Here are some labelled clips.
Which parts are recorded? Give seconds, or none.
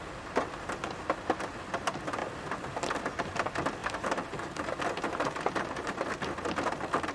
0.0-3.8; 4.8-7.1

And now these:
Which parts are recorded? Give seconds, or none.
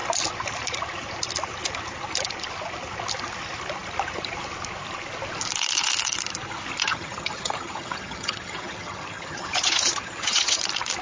0.0-6.8; 10.6-11.0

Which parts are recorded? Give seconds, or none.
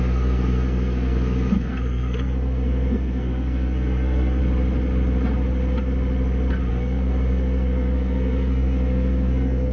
4.4-6.7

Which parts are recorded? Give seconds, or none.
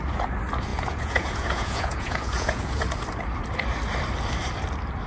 0.0-0.7; 2.8-5.1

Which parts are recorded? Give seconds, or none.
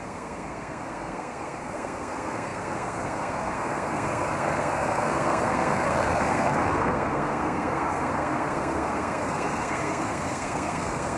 none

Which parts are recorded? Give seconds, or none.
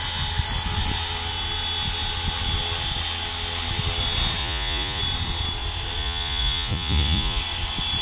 0.0-4.4; 5.0-6.0; 7.4-8.0